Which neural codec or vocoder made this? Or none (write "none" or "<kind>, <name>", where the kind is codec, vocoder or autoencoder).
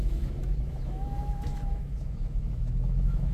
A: autoencoder, DAC-VAE